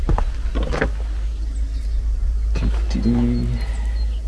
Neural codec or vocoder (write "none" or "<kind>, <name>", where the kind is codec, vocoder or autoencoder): none